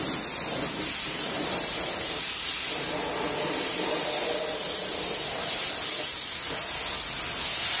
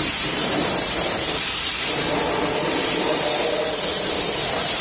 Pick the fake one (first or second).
second